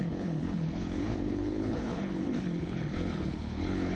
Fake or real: fake